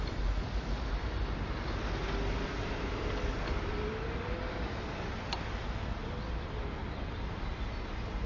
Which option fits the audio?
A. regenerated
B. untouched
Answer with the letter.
B